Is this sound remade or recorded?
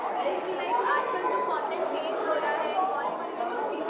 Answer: recorded